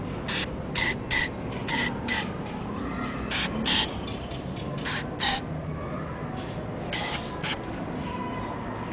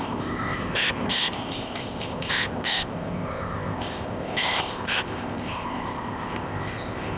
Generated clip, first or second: second